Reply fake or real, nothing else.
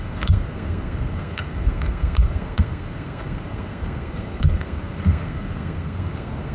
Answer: fake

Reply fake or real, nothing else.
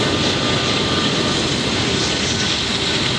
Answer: real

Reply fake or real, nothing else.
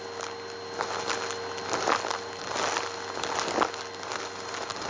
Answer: real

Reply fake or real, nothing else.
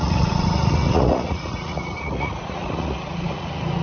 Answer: fake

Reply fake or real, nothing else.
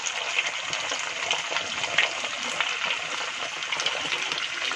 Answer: real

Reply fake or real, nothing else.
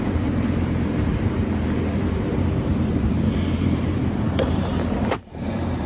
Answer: fake